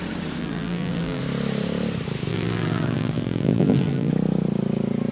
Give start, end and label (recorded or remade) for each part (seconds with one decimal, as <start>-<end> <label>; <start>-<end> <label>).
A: 0.0-0.4 recorded; 0.4-1.2 remade; 1.2-2.3 recorded; 2.3-4.1 remade; 4.1-5.1 recorded

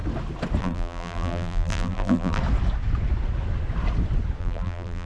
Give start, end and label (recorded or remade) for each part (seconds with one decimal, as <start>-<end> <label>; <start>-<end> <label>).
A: 0.0-0.6 recorded; 0.6-2.4 remade; 2.4-4.4 recorded; 4.4-5.1 remade

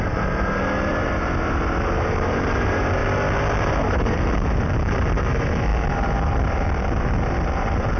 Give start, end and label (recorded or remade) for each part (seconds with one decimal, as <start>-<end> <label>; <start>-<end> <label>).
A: 0.0-3.0 remade; 3.0-3.6 recorded; 3.6-8.0 remade

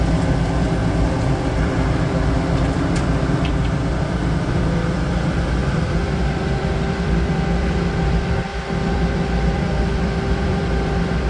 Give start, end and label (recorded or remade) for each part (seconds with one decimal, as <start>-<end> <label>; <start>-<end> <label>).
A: 0.0-0.8 remade; 0.8-1.4 recorded; 1.4-3.8 remade; 3.8-4.5 recorded; 4.5-11.3 remade

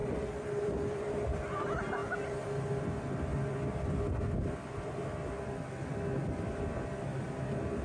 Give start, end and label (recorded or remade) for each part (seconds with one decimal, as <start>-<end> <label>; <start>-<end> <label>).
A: 0.0-1.1 remade; 1.1-7.8 recorded

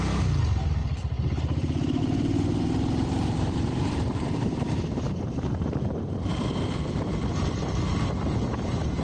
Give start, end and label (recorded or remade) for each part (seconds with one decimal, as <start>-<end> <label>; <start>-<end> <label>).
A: 0.0-2.5 recorded; 2.5-7.1 remade; 7.1-9.0 recorded

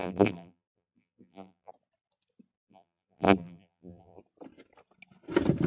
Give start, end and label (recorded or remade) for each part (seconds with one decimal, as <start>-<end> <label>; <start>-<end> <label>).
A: 0.0-1.7 remade; 1.7-2.6 recorded; 2.6-4.2 remade; 4.2-5.7 recorded

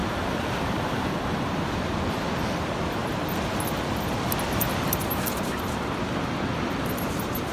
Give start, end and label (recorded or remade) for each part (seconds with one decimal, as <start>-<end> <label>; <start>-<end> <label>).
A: 0.0-1.9 remade; 1.9-7.5 recorded